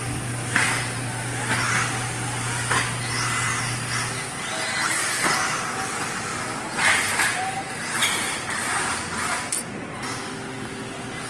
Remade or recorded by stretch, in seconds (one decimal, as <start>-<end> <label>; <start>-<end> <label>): 0.0-11.3 recorded